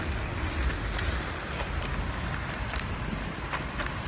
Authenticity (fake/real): real